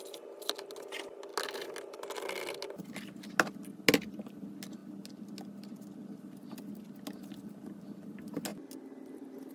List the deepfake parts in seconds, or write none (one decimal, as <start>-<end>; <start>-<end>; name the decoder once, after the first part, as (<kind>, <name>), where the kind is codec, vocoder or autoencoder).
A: none